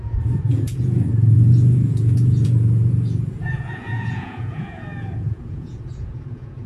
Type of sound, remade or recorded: remade